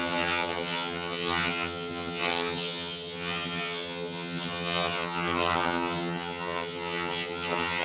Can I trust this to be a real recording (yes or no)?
no